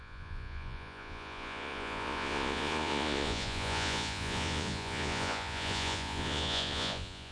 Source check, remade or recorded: remade